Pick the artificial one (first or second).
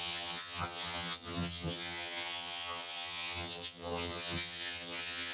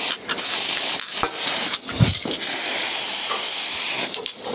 first